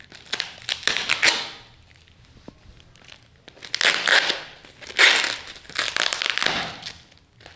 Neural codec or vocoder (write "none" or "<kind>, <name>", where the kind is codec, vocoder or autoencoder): none